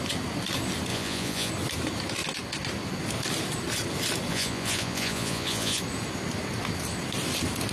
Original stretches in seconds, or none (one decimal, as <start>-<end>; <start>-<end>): 0.0-0.9; 1.5-4.3; 5.8-7.7